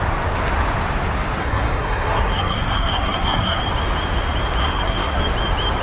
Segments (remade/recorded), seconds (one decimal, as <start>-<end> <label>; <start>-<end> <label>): 0.0-1.4 recorded; 1.4-3.6 remade; 3.6-4.6 recorded; 4.6-5.2 remade; 5.2-5.8 recorded